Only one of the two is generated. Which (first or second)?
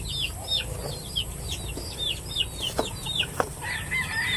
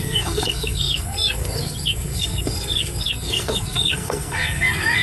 second